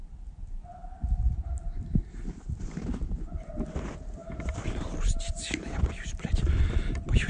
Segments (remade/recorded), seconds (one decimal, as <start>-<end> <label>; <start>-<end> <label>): 0.0-7.3 recorded